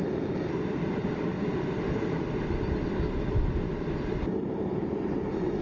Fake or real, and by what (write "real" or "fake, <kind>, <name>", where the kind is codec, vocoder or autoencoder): real